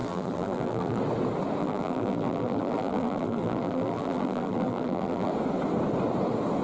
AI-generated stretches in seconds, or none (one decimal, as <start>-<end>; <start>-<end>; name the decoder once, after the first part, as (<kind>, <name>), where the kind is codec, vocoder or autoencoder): 0.0-1.0 (vocoder, BigVGAN v2); 1.6-5.3